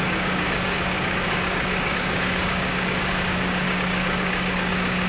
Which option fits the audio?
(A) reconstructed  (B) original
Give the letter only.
A